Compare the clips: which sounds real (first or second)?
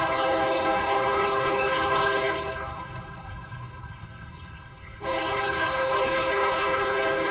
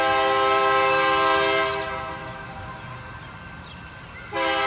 second